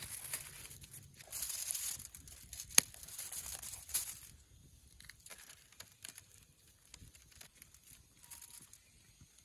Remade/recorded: recorded